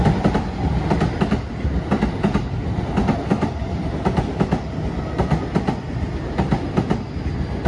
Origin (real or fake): real